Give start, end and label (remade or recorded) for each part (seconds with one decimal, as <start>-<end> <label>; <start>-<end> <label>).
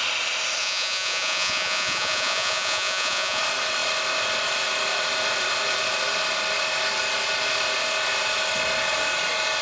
0.0-0.6 recorded; 0.6-3.4 remade; 3.4-9.6 recorded